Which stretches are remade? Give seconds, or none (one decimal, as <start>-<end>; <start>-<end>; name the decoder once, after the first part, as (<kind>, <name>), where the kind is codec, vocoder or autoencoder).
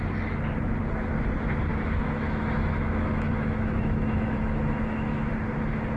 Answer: 1.7-5.3 (autoencoder, DAC-VAE)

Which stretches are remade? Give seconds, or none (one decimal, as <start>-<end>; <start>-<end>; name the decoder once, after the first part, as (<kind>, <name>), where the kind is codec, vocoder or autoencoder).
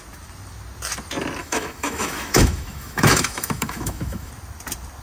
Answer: 1.4-4.3 (autoencoder, DAC-VAE)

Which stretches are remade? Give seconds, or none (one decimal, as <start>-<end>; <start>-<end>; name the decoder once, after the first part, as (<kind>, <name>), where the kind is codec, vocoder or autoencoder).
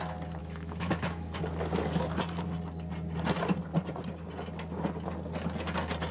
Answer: 0.4-1.4 (autoencoder, DAC-VAE)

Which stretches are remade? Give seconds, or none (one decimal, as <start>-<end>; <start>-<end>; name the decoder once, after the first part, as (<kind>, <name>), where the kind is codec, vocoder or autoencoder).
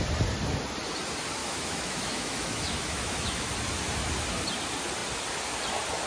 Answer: 1.4-3.5 (autoencoder, DAC-VAE)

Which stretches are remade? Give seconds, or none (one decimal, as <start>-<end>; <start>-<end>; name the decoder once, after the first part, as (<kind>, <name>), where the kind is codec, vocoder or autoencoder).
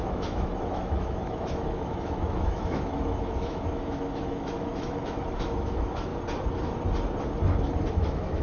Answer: 0.0-6.1 (autoencoder, DAC-VAE); 7.9-8.4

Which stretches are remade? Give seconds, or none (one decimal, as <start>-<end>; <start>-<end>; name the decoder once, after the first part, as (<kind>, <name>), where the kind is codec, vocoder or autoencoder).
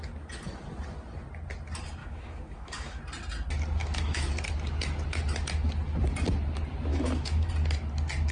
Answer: 2.0-3.0 (autoencoder, DAC-VAE); 3.8-4.3; 6.9-7.5